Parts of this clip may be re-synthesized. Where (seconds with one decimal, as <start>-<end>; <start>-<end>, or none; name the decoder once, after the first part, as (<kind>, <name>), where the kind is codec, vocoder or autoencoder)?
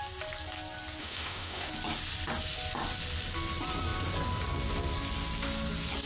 1.0-1.7 (autoencoder, DAC-VAE)